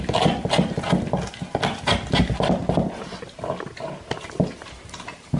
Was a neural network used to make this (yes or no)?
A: no